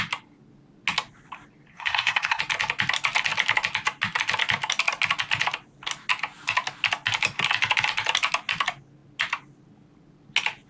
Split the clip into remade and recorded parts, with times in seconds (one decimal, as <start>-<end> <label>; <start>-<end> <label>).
0.0-1.7 recorded; 1.7-2.4 remade; 2.4-10.7 recorded

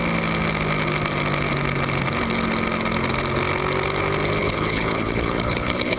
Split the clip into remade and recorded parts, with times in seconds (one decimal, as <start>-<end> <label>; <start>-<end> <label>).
0.0-4.4 recorded; 4.4-6.0 remade

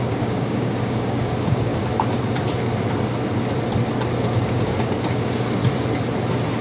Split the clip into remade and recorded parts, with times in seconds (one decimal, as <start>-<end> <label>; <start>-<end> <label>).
0.0-1.7 remade; 1.7-4.2 recorded; 4.2-5.6 remade; 5.6-6.6 recorded

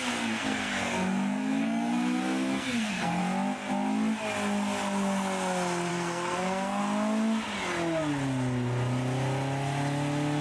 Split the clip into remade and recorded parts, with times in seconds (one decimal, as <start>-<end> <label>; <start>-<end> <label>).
0.0-3.2 remade; 3.2-5.9 recorded; 5.9-6.8 remade; 6.8-10.4 recorded

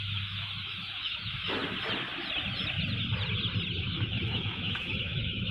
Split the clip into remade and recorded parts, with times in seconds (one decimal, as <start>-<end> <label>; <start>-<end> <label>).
0.0-1.6 remade; 1.6-3.8 recorded; 3.8-5.5 remade

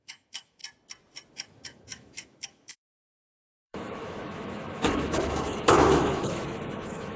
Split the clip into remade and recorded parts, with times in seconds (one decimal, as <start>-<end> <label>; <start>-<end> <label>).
0.0-0.6 remade; 0.6-1.3 recorded; 1.3-7.2 remade